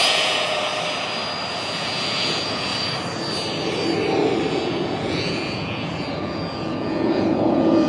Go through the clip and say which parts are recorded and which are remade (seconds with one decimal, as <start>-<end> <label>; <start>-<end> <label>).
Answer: 0.0-0.7 remade; 0.7-1.5 recorded; 1.5-2.7 remade; 2.7-4.5 recorded; 4.5-7.9 remade